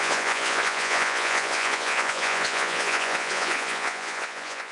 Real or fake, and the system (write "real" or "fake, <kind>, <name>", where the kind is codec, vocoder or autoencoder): fake, vocoder, Vocos